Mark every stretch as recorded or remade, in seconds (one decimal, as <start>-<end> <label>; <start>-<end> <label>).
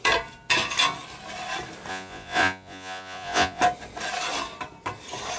0.0-1.9 recorded; 1.9-3.6 remade; 3.6-5.4 recorded